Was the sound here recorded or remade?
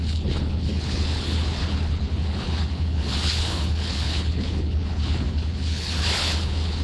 remade